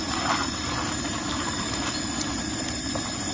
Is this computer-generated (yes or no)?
no